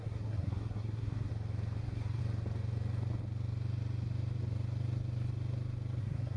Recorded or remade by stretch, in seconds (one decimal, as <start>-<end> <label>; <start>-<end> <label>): 0.0-1.3 remade; 1.3-1.8 recorded; 1.8-2.2 remade; 2.2-6.0 recorded; 6.0-6.4 remade